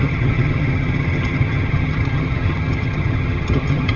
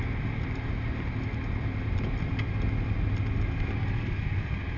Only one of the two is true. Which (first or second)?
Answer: second